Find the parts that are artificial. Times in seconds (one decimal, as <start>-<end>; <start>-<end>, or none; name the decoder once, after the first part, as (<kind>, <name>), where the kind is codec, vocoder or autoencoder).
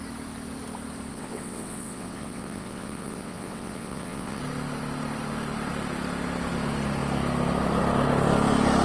1.1-4.4 (vocoder, WaveNeXt)